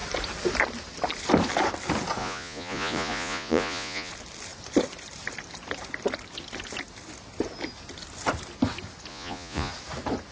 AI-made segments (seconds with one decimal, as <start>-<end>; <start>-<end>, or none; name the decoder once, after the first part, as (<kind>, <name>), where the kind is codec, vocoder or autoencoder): 2.2-4.1 (vocoder, Vocos); 9.1-9.7